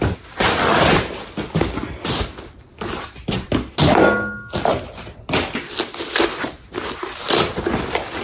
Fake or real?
real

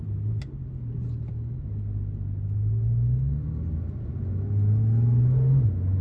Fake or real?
real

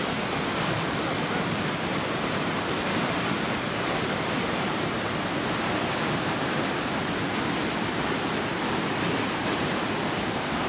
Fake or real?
fake